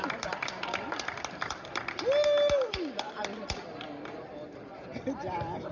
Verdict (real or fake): real